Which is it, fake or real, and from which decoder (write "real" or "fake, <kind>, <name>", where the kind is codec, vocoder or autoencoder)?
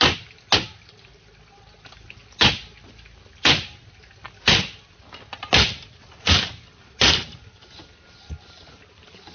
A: real